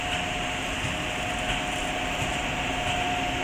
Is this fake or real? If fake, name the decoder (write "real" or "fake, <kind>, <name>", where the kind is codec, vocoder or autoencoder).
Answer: real